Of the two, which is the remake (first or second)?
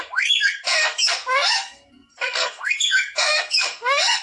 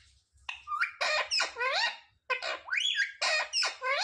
first